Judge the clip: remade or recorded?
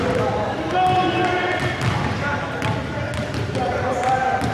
recorded